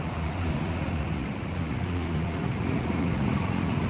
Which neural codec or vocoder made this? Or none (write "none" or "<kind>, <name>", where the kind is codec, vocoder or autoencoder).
vocoder, Vocos